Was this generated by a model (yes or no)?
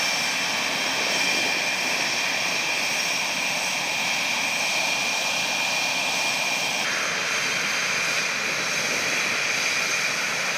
no